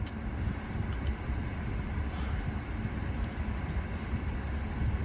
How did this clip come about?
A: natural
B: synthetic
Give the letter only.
A